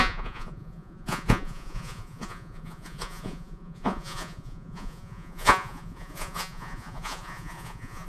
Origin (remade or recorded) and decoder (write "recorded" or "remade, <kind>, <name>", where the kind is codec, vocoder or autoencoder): remade, vocoder, Vocos